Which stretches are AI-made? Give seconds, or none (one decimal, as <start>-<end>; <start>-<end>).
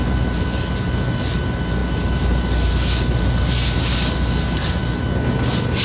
none